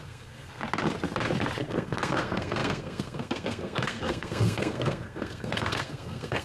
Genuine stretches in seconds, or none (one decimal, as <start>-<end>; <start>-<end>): 0.6-1.7